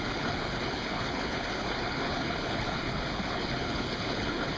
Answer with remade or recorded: remade